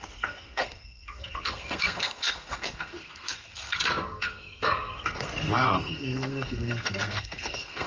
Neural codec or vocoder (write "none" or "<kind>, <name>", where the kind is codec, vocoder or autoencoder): codec, SNAC